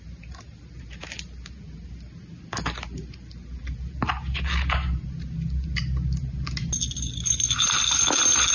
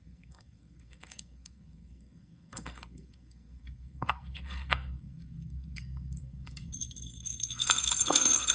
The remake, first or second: second